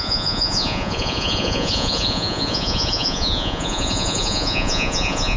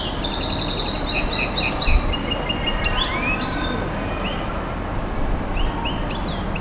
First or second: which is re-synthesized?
first